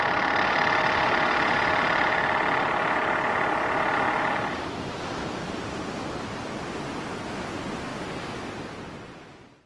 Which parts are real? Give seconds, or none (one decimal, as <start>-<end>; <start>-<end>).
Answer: 0.0-9.7